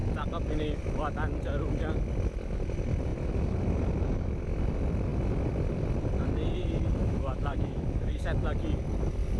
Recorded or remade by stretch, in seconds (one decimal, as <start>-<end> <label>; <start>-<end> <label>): 0.0-7.0 recorded; 7.0-8.2 remade; 8.2-9.4 recorded